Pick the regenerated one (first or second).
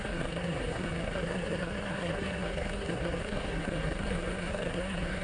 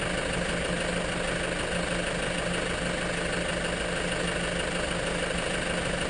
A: first